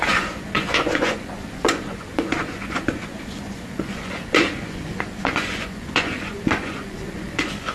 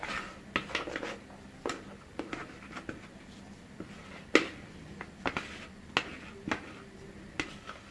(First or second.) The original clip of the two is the second